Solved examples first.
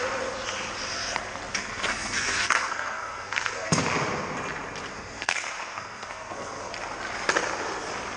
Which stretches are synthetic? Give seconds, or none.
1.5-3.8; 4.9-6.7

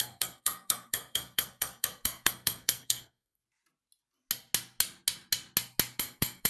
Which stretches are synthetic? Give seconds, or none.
0.0-3.4; 6.0-6.5

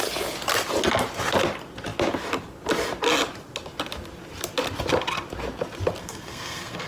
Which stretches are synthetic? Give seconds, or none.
6.0-6.9